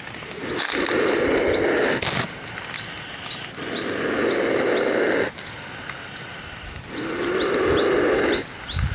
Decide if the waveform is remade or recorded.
recorded